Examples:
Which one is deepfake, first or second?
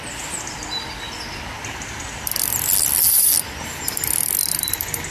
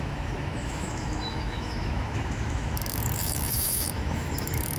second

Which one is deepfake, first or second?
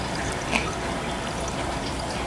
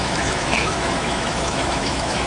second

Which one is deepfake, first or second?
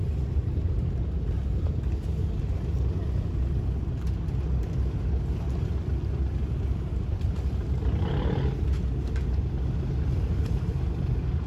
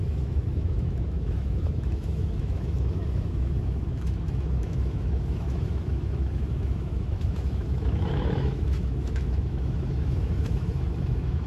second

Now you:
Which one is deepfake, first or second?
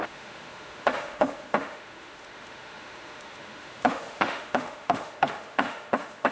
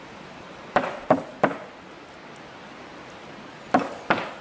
first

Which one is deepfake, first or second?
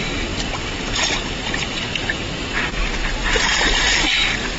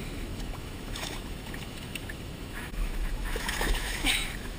second